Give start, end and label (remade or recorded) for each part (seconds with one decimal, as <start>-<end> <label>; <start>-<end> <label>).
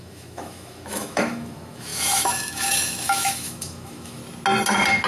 0.0-4.2 remade; 4.2-5.1 recorded